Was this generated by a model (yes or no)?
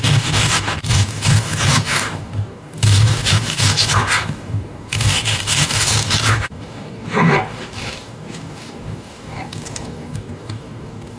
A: yes